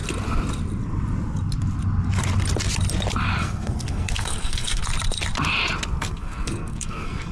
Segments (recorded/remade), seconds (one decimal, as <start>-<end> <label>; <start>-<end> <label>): 0.0-3.4 recorded; 3.4-4.8 remade; 4.8-6.0 recorded; 6.0-7.3 remade